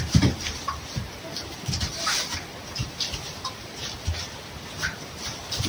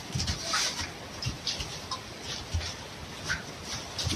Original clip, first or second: second